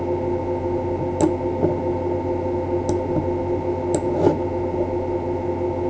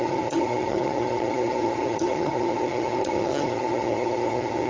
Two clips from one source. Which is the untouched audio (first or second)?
first